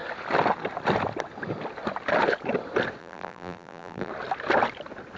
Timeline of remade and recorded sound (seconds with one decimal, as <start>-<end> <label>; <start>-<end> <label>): 0.0-3.0 recorded; 3.0-4.1 remade; 4.1-5.2 recorded